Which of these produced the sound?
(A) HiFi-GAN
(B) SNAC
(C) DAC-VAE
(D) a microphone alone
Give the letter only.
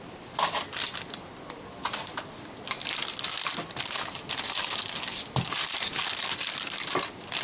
D